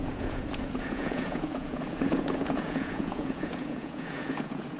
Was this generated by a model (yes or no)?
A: yes